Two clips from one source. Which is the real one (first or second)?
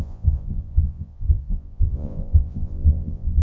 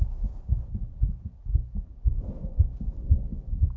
second